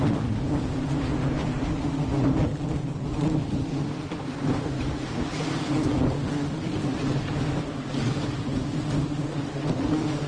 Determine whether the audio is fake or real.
real